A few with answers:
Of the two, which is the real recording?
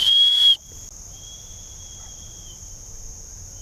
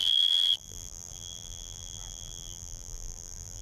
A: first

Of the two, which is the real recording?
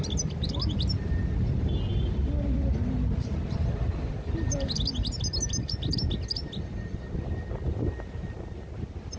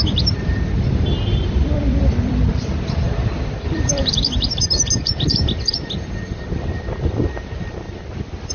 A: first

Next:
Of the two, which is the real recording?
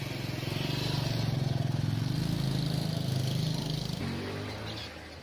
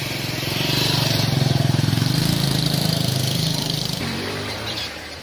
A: first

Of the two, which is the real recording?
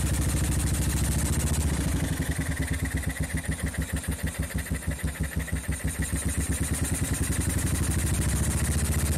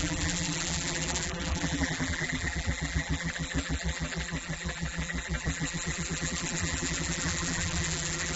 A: first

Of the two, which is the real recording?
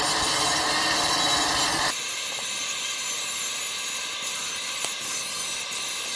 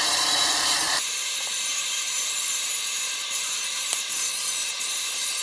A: first